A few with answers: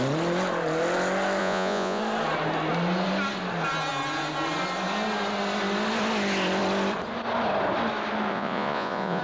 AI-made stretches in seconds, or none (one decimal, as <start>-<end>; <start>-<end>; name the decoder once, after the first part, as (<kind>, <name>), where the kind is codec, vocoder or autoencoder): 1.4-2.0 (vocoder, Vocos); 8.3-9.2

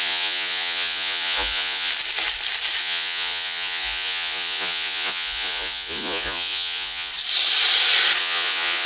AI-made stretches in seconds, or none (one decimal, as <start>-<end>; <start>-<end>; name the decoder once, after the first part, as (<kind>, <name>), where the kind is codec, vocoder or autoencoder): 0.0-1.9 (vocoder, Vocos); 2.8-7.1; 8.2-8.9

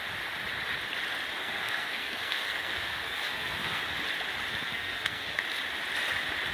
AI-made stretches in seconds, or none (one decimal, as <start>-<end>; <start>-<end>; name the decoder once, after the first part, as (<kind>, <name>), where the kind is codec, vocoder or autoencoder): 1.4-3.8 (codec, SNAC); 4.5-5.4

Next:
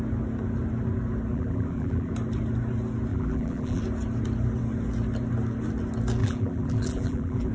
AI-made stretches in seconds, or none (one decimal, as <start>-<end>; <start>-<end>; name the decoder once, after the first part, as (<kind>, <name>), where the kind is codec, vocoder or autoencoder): 1.3-2.1 (vocoder, BigVGAN v2); 3.1-3.8; 6.2-7.5

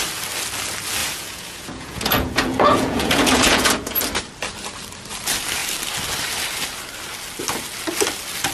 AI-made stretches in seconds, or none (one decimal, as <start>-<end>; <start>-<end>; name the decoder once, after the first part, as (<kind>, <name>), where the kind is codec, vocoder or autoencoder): 1.0-4.0 (vocoder, Vocos)

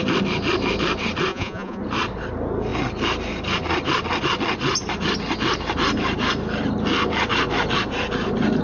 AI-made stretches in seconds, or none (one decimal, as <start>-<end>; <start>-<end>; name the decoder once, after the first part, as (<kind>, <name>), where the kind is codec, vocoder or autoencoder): 1.3-1.8 (vocoder, Vocos)